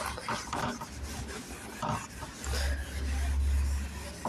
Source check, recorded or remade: recorded